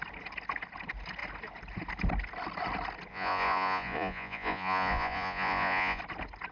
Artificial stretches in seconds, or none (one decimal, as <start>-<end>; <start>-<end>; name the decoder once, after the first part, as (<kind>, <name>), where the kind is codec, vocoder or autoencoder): 3.1-6.0 (vocoder, Vocos)